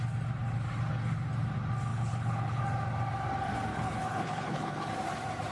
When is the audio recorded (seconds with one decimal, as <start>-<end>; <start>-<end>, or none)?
0.0-1.9; 2.6-3.7; 4.9-5.5